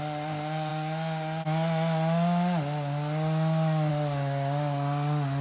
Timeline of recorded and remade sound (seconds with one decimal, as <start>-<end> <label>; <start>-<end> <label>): 0.0-5.4 recorded